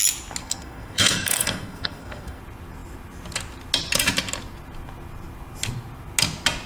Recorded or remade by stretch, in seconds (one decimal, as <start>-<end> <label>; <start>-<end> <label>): 0.0-0.4 recorded; 0.4-2.4 remade; 2.4-6.7 recorded

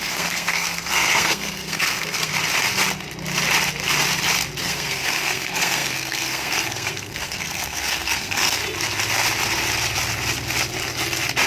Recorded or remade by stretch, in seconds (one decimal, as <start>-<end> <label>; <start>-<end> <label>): 0.0-2.3 remade; 2.3-4.6 recorded; 4.6-8.6 remade; 8.6-11.5 recorded

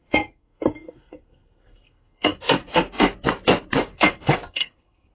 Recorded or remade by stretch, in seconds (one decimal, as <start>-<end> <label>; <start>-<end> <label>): 0.0-3.1 remade; 3.1-3.9 recorded; 3.9-5.1 remade